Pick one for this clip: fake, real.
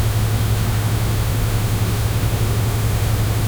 fake